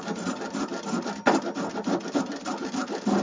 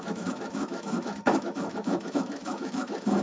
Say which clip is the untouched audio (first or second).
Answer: first